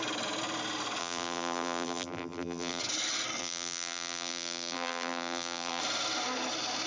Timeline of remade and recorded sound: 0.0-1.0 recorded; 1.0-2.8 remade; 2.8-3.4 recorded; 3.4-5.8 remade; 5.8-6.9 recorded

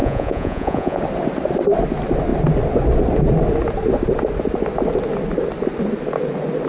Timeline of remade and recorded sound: 0.0-1.0 remade; 1.0-6.7 recorded

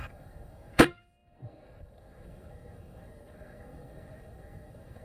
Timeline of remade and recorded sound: 0.0-5.0 remade

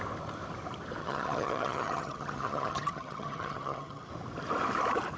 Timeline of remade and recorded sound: 0.0-1.0 recorded; 1.0-4.1 remade; 4.1-5.2 recorded

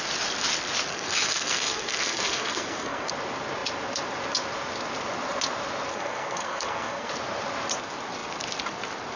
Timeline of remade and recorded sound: 0.0-0.9 recorded; 0.9-3.1 remade; 3.1-5.9 recorded; 5.9-7.1 remade; 7.1-9.2 recorded

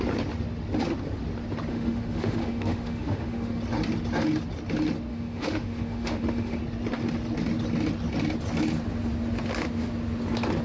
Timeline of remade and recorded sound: 0.0-1.7 recorded; 1.7-3.6 remade; 3.6-5.1 recorded; 5.1-6.6 remade; 6.6-10.6 recorded

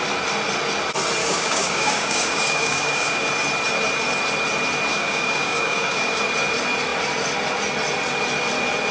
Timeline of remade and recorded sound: 0.0-1.2 recorded; 1.2-3.3 remade; 3.3-4.9 recorded; 4.9-6.2 remade; 6.2-8.9 recorded

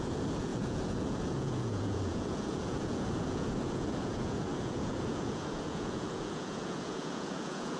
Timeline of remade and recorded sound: 0.0-7.8 remade